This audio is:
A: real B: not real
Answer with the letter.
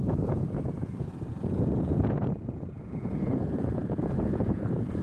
B